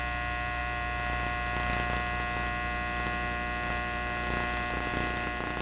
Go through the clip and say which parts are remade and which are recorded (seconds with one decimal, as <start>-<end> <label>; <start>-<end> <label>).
0.0-5.6 recorded